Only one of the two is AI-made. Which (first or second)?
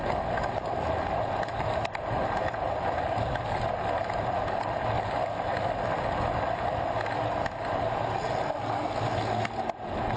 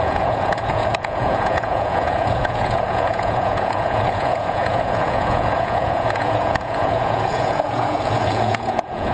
second